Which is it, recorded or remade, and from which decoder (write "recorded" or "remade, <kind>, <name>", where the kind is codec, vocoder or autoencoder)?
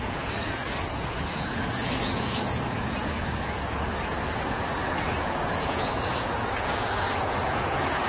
remade, vocoder, Vocos